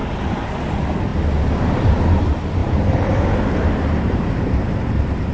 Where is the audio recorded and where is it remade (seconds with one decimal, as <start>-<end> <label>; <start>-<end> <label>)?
0.0-0.7 remade; 0.7-2.6 recorded; 2.6-5.3 remade